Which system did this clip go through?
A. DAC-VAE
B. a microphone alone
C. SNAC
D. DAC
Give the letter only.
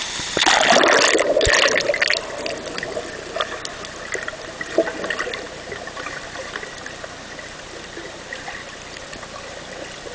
B